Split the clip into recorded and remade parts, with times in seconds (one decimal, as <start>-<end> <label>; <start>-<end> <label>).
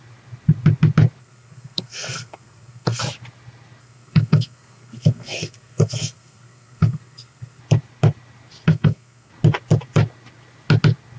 0.0-1.2 recorded; 1.2-3.0 remade; 3.0-3.8 recorded; 3.8-7.6 remade; 7.6-8.7 recorded; 8.7-9.3 remade; 9.3-11.2 recorded